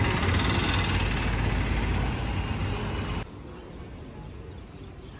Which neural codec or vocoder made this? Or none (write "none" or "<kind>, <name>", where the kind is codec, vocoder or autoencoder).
none